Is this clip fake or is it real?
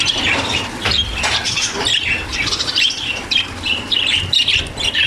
real